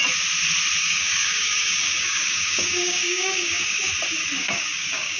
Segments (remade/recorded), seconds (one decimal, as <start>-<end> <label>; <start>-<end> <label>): 0.0-0.8 recorded; 0.8-3.9 remade; 3.9-4.4 recorded; 4.4-5.2 remade